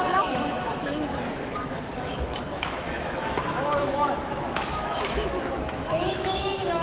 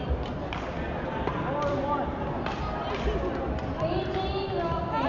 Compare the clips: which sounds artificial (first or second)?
first